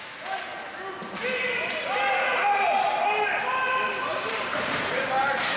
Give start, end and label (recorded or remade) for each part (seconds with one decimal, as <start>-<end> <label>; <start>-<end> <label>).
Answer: 0.0-4.1 recorded; 4.1-4.9 remade; 4.9-5.6 recorded